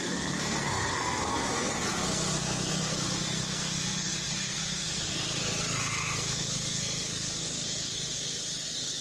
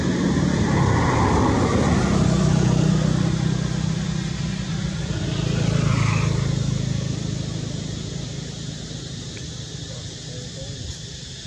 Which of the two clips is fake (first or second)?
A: first